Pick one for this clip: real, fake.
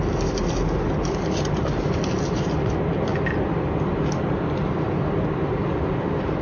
real